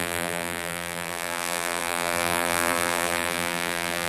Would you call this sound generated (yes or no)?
yes